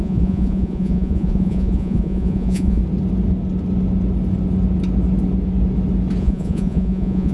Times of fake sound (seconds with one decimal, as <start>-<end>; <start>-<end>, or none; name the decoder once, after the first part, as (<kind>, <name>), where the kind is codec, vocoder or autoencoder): 0.0-2.8 (vocoder, Vocos); 6.2-7.3